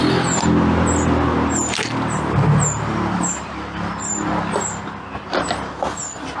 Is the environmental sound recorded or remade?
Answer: recorded